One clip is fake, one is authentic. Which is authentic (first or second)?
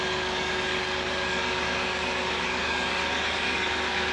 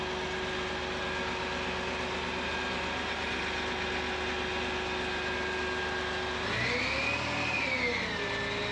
second